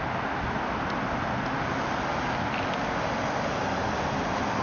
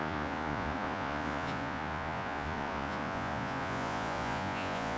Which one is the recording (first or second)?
first